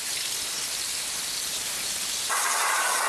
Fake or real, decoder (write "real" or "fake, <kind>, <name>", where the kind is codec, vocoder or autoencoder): real